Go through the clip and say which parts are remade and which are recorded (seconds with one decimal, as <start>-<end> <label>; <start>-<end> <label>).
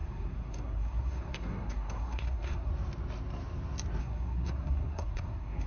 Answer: 0.0-2.7 remade; 2.7-4.0 recorded; 4.0-5.7 remade